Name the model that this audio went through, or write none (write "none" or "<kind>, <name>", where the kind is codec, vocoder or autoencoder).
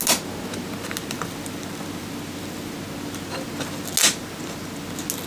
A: none